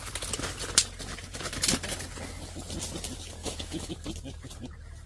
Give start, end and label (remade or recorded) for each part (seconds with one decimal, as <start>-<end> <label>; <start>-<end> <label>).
0.0-3.4 recorded; 3.4-3.9 remade; 3.9-5.1 recorded